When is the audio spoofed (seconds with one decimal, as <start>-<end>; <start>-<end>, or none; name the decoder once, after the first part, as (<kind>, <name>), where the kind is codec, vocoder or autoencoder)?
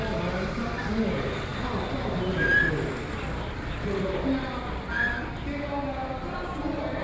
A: none